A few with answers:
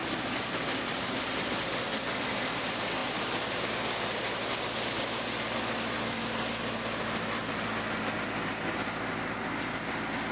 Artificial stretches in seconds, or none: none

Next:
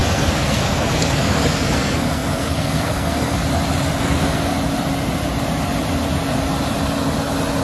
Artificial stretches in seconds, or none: 0.0-3.4 (codec, SNAC); 4.0-4.5

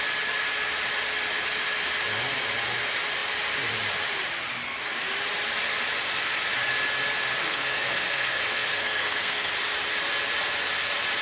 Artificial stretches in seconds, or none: 7.4-9.5 (codec, SNAC)